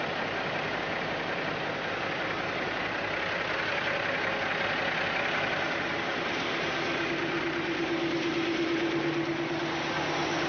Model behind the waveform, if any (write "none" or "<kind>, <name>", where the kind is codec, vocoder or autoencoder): none